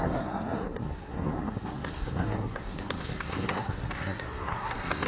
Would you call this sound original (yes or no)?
no